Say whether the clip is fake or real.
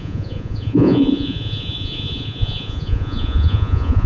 fake